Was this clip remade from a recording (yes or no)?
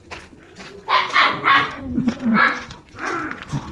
yes